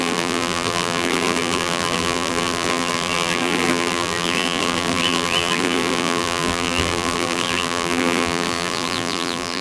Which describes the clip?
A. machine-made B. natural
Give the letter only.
A